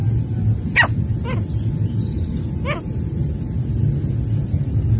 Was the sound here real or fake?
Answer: real